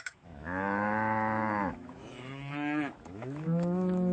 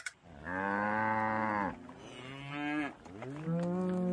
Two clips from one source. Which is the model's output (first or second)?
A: first